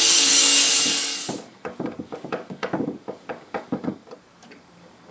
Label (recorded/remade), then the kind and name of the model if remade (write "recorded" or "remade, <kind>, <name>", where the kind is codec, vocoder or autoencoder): remade, codec, DAC